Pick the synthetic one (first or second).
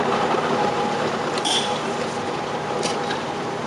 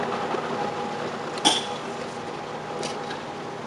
first